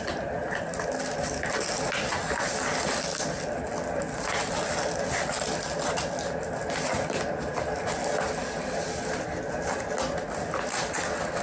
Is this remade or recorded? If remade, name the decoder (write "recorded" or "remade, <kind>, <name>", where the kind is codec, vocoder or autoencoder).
recorded